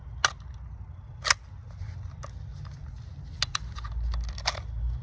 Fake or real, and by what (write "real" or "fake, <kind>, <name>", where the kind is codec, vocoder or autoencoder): real